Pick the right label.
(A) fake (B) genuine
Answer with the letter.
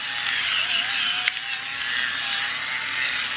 B